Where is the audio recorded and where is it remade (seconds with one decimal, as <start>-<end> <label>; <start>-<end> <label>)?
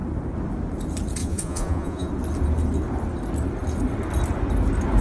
0.0-1.2 recorded; 1.2-2.1 remade; 2.1-5.0 recorded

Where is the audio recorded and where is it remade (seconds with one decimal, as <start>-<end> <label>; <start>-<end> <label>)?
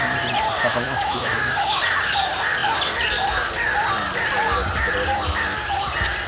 0.0-0.7 recorded; 0.7-1.8 remade; 1.8-6.3 recorded